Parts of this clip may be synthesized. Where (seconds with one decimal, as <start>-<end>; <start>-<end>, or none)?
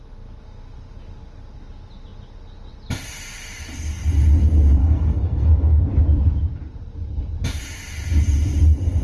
4.8-5.8